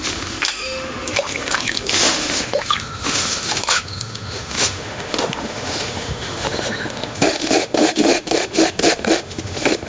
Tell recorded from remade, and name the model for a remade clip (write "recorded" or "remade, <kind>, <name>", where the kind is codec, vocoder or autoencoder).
remade, autoencoder, DAC-VAE